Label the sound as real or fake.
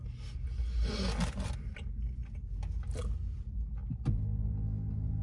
real